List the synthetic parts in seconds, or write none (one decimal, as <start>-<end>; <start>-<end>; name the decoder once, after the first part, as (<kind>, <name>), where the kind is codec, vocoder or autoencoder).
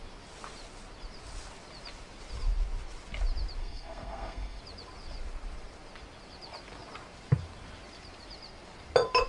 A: 3.6-4.6 (codec, SNAC)